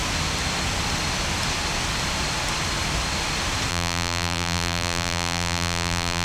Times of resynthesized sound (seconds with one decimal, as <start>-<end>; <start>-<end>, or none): 3.7-6.2